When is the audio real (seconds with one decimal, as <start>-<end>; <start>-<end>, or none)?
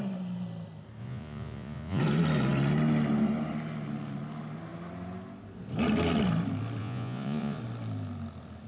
0.0-1.0; 2.0-6.8; 7.6-8.7